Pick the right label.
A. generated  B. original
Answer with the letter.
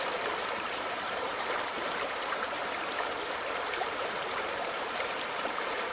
A